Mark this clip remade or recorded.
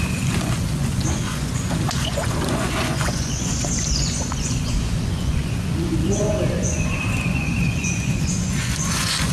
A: remade